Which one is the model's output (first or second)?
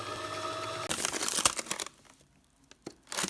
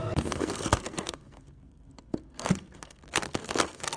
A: second